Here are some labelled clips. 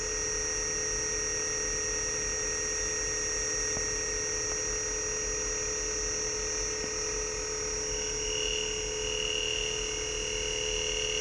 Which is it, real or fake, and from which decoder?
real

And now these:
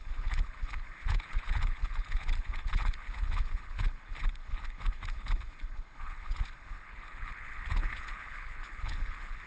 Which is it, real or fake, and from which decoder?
fake, codec, HILCodec